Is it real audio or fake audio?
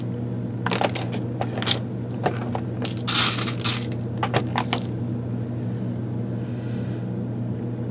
real